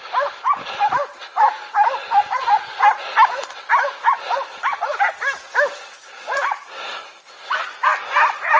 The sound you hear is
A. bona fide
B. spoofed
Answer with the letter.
A